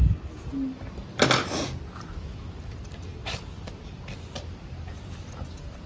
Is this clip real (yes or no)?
yes